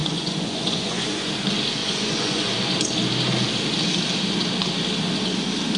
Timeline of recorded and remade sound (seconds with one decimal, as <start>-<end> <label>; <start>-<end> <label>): 0.0-1.3 remade; 1.3-1.8 recorded; 1.8-2.5 remade; 2.5-5.8 recorded

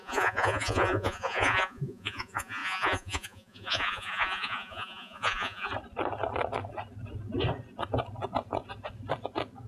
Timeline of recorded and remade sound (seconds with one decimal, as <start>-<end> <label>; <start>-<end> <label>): 0.0-5.7 remade; 5.7-9.7 recorded

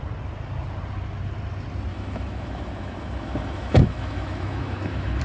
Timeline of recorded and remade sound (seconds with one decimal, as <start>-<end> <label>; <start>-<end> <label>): 0.0-1.9 recorded; 1.9-5.2 remade